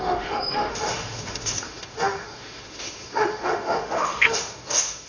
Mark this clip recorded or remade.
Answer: remade